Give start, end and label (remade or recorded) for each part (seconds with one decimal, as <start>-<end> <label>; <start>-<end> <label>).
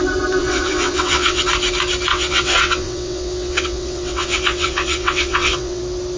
0.0-0.4 recorded; 0.4-1.4 remade; 1.4-2.1 recorded; 2.1-5.8 remade; 5.8-6.2 recorded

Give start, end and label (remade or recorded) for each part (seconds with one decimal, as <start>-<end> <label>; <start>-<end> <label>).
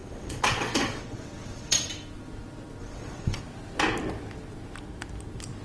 0.0-1.9 remade; 1.9-2.8 recorded; 2.8-3.4 remade; 3.4-5.6 recorded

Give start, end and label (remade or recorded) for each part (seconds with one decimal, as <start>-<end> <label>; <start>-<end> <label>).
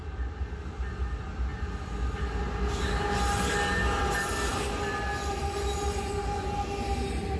0.0-7.4 recorded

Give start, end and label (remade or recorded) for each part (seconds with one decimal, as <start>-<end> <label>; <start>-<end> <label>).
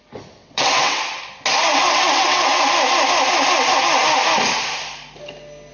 0.0-0.4 recorded; 0.4-1.0 remade; 1.0-1.7 recorded; 1.7-2.6 remade; 2.6-5.7 recorded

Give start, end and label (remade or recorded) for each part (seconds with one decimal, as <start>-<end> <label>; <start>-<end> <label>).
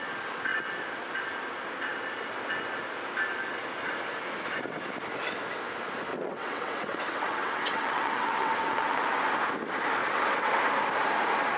0.0-6.1 recorded; 6.1-9.2 remade; 9.2-10.0 recorded; 10.0-10.6 remade; 10.6-11.6 recorded